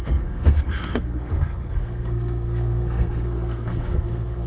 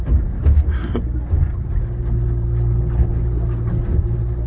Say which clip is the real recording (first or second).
second